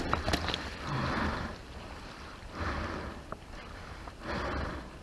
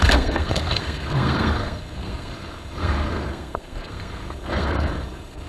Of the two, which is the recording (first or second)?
first